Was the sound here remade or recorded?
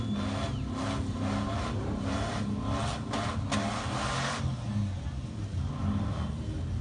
recorded